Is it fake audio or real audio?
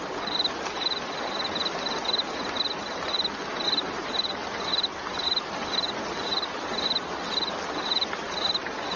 real